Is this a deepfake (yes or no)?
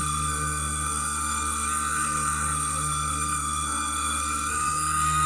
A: yes